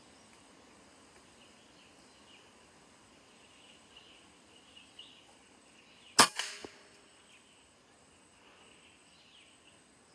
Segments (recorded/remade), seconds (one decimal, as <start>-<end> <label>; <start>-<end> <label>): 0.0-10.1 recorded